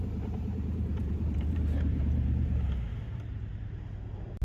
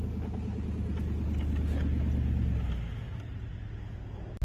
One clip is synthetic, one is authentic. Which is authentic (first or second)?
second